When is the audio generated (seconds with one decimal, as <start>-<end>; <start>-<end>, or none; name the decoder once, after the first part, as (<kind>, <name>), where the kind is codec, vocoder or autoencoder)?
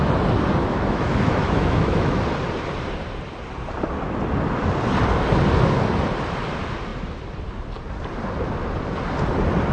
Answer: 0.6-2.2 (autoencoder, DAC-VAE)